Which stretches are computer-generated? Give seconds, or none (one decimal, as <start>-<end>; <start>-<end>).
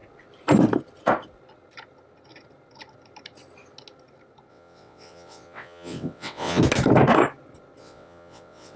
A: 4.5-6.6; 7.8-8.8